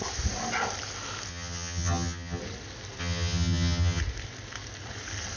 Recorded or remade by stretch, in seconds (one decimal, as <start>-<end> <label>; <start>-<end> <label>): 0.0-1.3 recorded; 1.3-2.4 remade; 2.4-3.0 recorded; 3.0-4.0 remade; 4.0-5.4 recorded